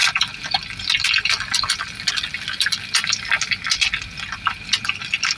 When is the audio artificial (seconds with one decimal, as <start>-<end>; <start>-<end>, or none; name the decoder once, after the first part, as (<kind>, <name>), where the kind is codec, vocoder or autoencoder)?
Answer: none